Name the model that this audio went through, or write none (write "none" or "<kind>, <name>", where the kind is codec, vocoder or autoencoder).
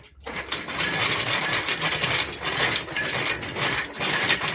none